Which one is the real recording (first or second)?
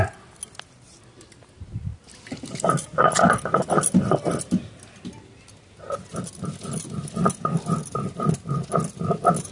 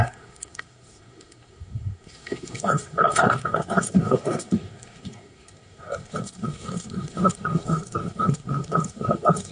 first